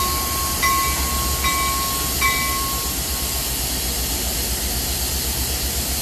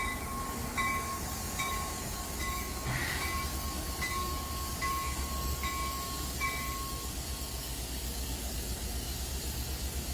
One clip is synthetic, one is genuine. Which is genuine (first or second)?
first